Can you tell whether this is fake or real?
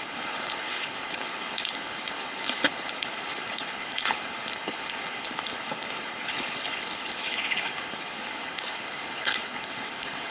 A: fake